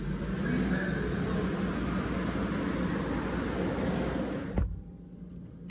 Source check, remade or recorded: recorded